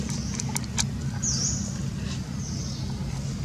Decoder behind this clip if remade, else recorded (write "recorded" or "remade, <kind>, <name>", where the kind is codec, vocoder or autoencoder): recorded